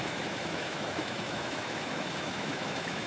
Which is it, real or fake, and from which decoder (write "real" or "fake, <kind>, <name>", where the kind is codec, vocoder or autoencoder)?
fake, autoencoder, DAC-VAE